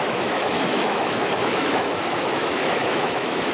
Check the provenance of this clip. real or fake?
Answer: fake